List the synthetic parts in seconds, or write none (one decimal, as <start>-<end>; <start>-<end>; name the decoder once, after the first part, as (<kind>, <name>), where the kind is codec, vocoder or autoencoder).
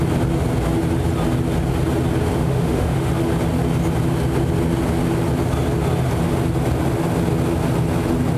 2.4-3.1 (autoencoder, DAC-VAE)